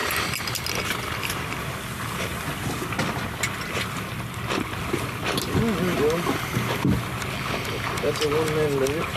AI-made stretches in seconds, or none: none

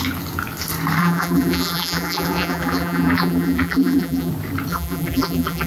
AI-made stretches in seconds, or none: 1.0-4.3; 4.7-5.7

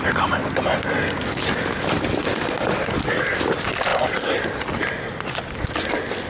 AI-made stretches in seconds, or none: none

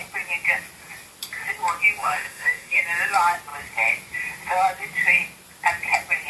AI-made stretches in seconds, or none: 2.0-2.8